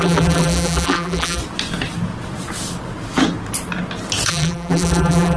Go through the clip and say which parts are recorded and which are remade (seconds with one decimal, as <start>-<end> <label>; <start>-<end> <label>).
0.0-1.4 remade; 1.4-4.3 recorded; 4.3-5.4 remade